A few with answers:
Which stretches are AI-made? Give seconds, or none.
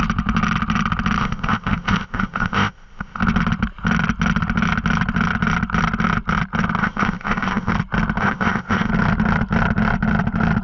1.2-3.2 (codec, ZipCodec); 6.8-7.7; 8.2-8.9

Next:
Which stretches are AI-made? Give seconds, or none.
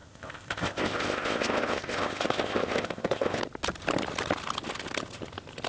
0.0-3.4 (codec, ZipCodec)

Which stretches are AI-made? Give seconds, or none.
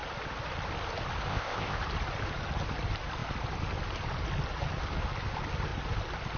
1.3-1.8 (codec, ZipCodec)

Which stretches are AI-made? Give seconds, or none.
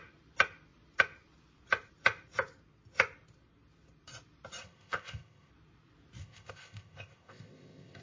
4.6-5.5 (codec, ZipCodec); 6.2-8.0